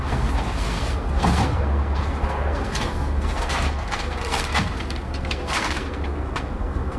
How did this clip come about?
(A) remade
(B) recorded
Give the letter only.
A